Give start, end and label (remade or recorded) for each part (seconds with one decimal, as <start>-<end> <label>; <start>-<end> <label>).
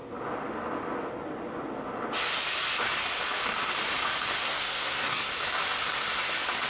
0.0-4.4 recorded; 4.4-5.3 remade; 5.3-6.7 recorded